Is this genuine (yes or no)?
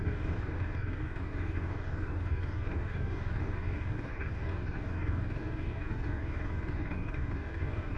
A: no